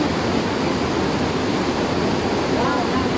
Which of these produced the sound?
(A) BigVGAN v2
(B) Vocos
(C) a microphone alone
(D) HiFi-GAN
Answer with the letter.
C